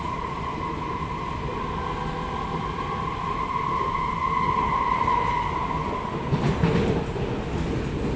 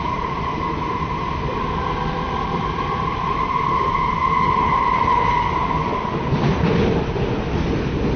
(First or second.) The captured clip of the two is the first